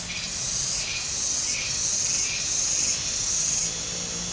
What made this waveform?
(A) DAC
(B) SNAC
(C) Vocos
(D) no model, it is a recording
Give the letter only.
D